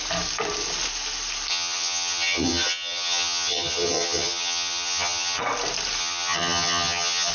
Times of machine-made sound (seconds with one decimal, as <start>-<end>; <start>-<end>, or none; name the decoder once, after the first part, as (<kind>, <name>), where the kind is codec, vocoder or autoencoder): 1.5-5.4 (vocoder, HiFi-GAN); 6.0-7.3